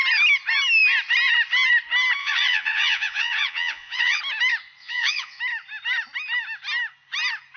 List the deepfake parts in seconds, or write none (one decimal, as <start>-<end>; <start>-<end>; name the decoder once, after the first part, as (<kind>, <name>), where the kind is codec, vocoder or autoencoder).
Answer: 2.2-4.2 (vocoder, Vocos); 4.8-5.4

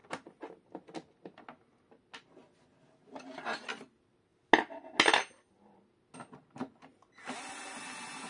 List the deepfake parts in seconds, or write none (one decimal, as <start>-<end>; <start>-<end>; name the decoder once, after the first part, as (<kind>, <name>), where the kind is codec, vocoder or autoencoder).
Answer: none

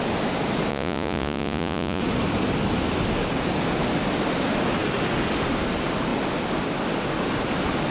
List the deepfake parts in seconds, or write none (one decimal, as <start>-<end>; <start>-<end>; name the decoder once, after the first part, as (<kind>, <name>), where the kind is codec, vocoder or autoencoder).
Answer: 0.7-2.0 (vocoder, Vocos)

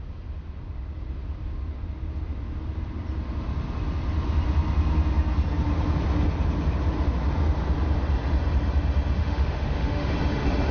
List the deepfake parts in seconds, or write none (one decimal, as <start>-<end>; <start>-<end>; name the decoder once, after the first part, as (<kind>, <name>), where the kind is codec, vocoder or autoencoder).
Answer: 9.2-10.1 (autoencoder, DAC-VAE)

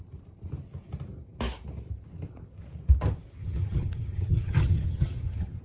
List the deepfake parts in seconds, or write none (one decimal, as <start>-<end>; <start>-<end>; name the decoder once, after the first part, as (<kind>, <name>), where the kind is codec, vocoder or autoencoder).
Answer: 3.4-5.6 (vocoder, HiFi-GAN)

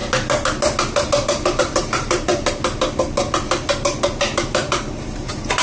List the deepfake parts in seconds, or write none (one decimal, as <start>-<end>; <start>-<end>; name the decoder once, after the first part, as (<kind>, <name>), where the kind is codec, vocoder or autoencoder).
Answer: 1.6-2.3 (vocoder, BigVGAN v2); 4.4-5.6

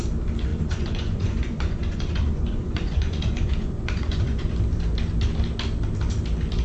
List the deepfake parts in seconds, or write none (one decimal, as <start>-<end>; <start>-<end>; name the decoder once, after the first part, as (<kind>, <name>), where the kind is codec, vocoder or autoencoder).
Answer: 0.5-4.5 (vocoder, Vocos)

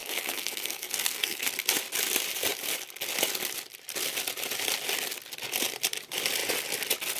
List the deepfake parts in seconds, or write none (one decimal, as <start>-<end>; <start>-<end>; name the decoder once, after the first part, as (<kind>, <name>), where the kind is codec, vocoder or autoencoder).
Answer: 0.0-1.5 (codec, SNAC)